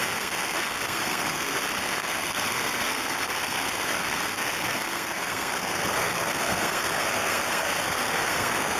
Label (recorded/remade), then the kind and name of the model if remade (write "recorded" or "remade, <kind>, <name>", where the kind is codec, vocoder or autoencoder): remade, codec, SNAC